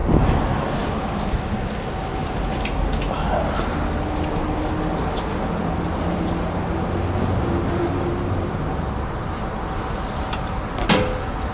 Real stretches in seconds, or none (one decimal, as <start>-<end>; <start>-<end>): 0.0-11.5